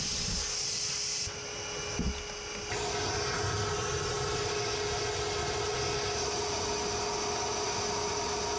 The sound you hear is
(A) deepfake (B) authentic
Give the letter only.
B